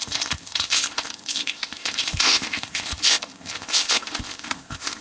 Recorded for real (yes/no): no